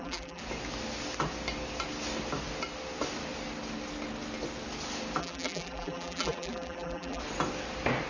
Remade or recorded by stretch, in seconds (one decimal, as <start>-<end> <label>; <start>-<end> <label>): 0.0-0.4 remade; 0.4-5.2 recorded; 5.2-7.2 remade; 7.2-8.1 recorded